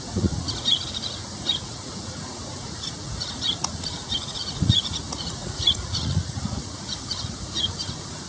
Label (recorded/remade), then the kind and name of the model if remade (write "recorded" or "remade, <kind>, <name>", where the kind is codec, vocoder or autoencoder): remade, vocoder, Vocos